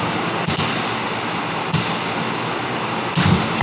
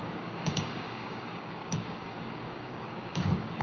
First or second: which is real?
first